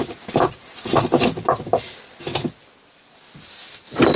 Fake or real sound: real